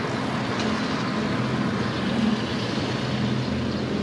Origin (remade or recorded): recorded